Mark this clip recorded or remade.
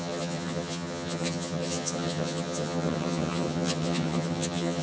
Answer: remade